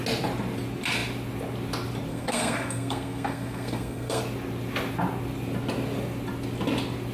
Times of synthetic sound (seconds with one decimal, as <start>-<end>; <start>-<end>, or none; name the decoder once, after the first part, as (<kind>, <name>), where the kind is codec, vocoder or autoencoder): 2.1-4.2 (codec, SNAC)